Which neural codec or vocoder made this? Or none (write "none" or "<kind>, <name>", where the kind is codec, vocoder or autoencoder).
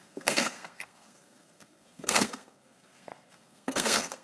codec, SNAC